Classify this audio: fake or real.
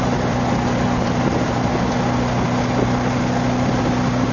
real